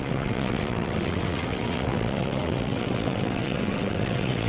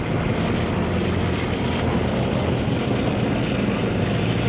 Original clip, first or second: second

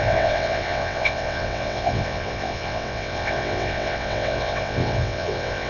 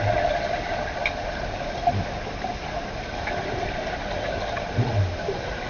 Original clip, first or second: second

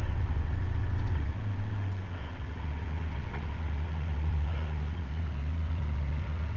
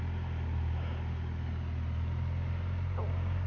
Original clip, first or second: second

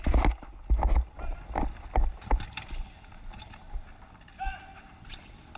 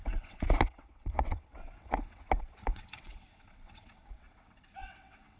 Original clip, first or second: first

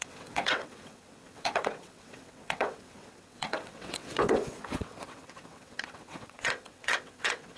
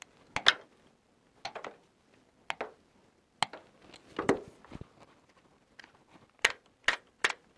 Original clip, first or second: second